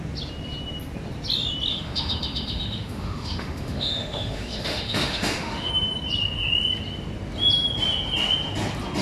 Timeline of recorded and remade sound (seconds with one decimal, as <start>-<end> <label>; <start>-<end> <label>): 0.0-1.7 recorded; 1.7-5.7 remade; 5.7-9.0 recorded